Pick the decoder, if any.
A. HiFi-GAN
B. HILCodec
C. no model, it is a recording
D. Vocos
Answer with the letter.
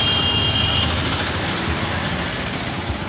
C